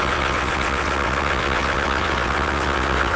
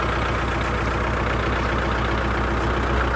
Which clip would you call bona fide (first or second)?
second